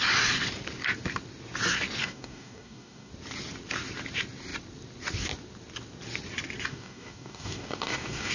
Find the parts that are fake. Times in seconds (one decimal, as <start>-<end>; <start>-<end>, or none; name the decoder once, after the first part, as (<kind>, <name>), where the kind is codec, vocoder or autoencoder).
2.0-3.1 (codec, DAC); 6.7-8.3